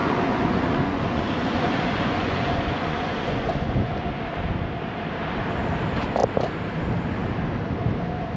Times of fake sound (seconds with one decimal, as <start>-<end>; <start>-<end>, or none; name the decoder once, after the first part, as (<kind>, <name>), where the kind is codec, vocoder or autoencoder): 0.0-4.2 (vocoder, Vocos)